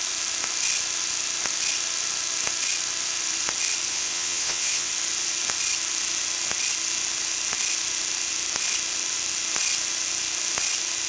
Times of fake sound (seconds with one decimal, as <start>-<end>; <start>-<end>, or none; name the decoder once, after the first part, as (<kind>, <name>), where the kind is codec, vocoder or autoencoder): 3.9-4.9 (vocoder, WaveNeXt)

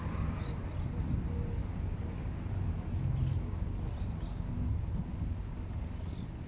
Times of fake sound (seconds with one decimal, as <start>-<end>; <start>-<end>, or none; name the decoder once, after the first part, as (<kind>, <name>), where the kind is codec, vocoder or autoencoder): none

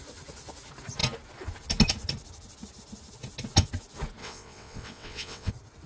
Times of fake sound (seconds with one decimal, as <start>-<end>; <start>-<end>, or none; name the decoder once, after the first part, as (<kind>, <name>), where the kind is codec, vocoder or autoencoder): 4.2-5.5 (vocoder, WaveNeXt)